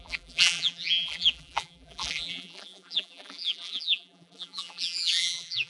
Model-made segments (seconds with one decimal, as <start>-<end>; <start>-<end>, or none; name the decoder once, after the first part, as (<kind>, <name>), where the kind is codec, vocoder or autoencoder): 0.0-5.7 (vocoder, BigVGAN v2)

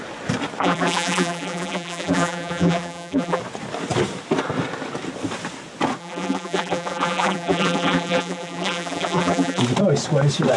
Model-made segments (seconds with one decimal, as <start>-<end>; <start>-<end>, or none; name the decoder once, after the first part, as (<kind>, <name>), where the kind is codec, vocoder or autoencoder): 0.6-3.4 (vocoder, BigVGAN v2); 6.0-9.6

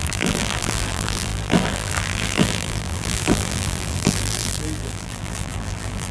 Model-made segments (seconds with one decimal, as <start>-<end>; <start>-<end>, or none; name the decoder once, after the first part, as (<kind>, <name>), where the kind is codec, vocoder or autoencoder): 0.0-6.1 (vocoder, BigVGAN v2)

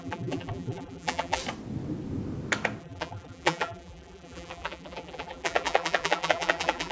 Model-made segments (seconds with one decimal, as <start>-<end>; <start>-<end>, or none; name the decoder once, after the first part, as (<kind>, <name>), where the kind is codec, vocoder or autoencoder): 0.0-1.4 (vocoder, BigVGAN v2); 2.8-6.9

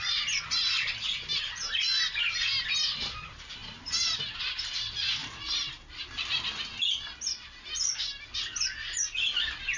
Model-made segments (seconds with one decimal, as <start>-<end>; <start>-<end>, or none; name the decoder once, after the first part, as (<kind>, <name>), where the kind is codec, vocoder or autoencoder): 3.6-4.2 (vocoder, BigVGAN v2); 5.2-6.0

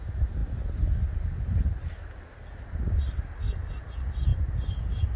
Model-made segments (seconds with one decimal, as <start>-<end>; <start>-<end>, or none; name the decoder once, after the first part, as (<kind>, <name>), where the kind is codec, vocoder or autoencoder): 4.3-5.2 (vocoder, BigVGAN v2)

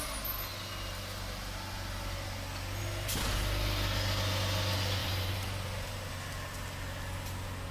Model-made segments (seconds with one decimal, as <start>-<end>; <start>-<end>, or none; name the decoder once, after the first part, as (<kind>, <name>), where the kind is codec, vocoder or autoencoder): 5.0-6.1 (vocoder, BigVGAN v2)

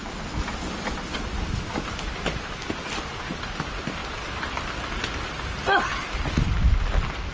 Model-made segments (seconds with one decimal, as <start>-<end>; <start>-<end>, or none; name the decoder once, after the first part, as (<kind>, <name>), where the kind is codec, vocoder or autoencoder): none